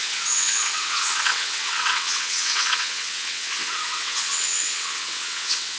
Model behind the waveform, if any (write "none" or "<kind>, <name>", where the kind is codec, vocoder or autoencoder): vocoder, WaveNeXt